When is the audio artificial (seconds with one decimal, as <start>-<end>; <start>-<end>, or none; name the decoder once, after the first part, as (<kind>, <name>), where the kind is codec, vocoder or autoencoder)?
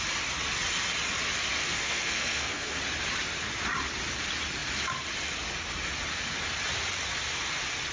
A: 1.6-2.8 (codec, SNAC)